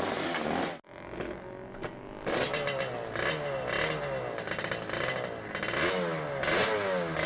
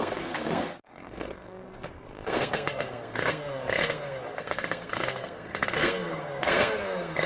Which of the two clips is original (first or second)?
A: first